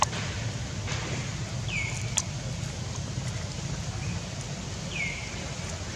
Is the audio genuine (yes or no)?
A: no